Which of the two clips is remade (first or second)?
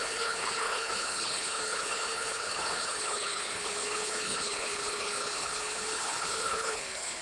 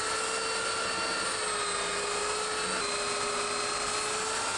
first